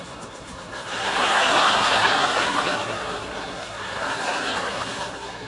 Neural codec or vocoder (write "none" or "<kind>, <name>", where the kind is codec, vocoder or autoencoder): codec, SNAC